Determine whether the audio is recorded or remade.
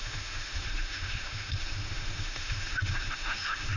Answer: remade